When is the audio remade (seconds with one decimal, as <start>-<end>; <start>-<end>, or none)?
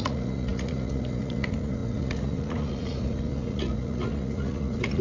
0.0-5.0